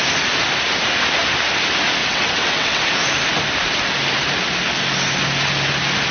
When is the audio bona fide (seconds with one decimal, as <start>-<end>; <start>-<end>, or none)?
0.0-2.0; 2.8-6.1